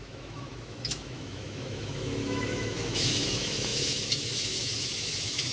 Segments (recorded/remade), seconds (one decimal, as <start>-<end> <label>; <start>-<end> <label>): 0.0-5.5 remade